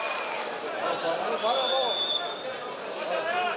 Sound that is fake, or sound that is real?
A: fake